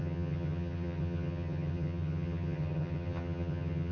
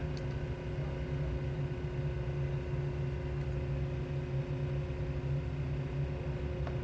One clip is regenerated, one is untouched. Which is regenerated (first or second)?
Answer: first